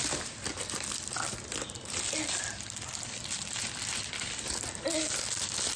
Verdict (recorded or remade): recorded